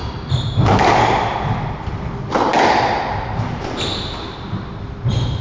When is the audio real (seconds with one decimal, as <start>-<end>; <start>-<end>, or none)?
0.0-5.4